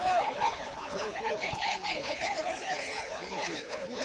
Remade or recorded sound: remade